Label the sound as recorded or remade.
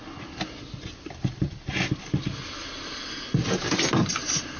recorded